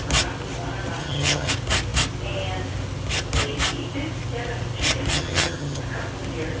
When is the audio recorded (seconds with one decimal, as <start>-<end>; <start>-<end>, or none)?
0.0-1.0; 1.5-5.1; 5.8-6.6